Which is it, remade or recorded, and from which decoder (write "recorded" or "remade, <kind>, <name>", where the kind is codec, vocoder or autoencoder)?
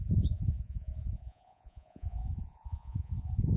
remade, vocoder, Vocos